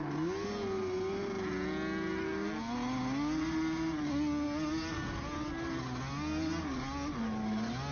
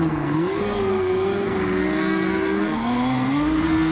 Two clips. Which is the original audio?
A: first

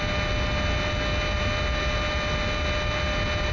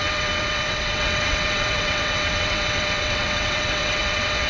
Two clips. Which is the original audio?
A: first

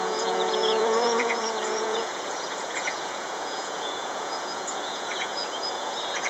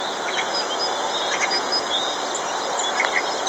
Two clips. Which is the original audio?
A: second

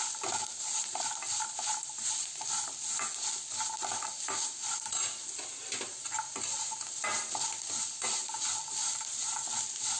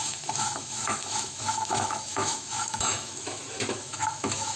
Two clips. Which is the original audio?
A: first